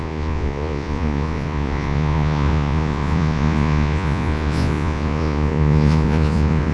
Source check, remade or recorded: remade